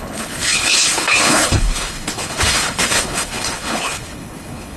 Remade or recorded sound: remade